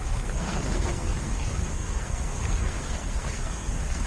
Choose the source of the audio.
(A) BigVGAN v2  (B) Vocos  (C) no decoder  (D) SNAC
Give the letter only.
D